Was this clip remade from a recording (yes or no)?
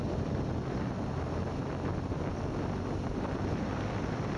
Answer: yes